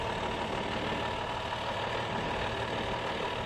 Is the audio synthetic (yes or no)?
no